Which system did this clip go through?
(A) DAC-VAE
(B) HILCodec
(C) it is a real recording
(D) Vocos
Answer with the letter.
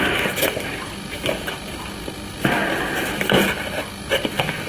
C